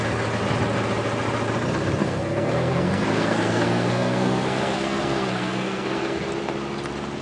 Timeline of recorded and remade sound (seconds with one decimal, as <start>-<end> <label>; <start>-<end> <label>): 0.0-2.0 recorded; 2.0-6.3 remade; 6.3-7.2 recorded